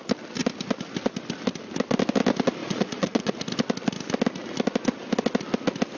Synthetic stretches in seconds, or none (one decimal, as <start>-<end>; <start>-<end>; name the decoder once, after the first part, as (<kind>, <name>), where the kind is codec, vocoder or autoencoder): 2.6-3.3 (vocoder, Vocos)

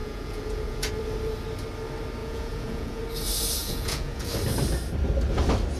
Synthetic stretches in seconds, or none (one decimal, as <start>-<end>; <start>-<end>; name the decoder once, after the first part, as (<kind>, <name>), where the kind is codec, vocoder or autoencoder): 0.0-0.9 (vocoder, Vocos); 2.2-3.0; 3.6-4.3

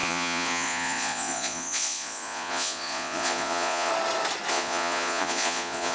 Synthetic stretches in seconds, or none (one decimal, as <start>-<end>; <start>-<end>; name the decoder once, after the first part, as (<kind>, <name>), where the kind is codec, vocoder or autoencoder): 0.0-3.9 (vocoder, Vocos); 4.5-5.9